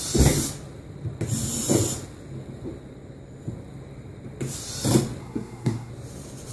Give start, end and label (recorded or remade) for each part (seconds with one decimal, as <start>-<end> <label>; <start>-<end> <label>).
0.0-5.2 recorded; 5.2-5.9 remade; 5.9-6.5 recorded